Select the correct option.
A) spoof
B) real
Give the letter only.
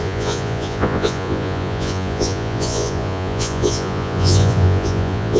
A